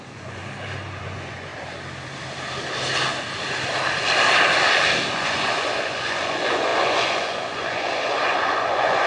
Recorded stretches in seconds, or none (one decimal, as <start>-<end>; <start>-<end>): 0.4-1.0; 1.5-5.1